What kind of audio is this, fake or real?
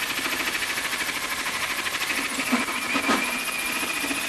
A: real